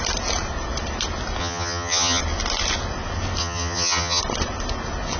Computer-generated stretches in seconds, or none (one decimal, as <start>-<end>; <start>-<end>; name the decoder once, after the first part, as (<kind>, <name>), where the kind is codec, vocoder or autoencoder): 1.4-2.2 (vocoder, HiFi-GAN); 3.4-4.2